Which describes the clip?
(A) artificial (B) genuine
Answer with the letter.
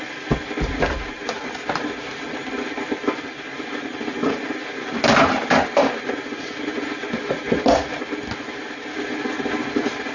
B